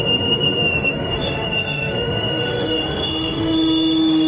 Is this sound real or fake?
fake